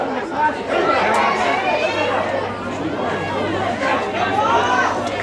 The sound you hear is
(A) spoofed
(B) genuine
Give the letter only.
B